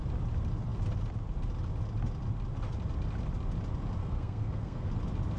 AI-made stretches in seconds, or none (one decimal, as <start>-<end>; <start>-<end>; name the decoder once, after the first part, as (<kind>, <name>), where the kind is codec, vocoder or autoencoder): 4.0-4.9 (codec, SNAC)